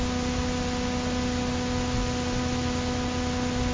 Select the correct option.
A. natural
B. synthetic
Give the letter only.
A